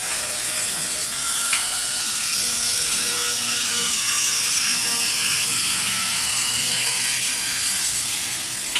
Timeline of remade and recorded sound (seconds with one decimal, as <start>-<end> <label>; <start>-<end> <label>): 0.0-8.8 remade